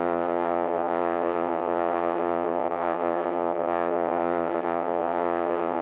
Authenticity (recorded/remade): remade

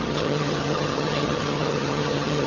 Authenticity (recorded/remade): remade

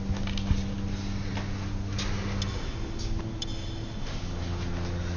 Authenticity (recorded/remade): recorded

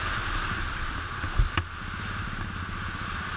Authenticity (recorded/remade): recorded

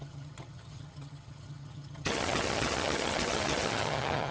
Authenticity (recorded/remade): remade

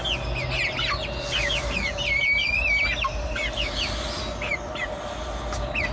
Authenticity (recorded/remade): recorded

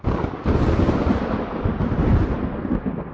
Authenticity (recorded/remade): recorded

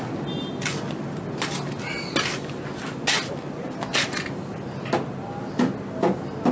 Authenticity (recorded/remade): recorded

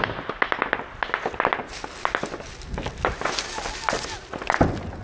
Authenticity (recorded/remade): recorded